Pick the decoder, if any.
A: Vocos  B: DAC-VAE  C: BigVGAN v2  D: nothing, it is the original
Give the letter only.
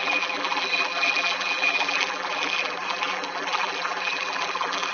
C